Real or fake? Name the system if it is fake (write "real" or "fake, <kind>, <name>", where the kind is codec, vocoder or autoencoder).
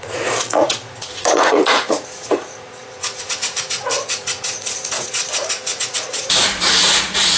fake, vocoder, Vocos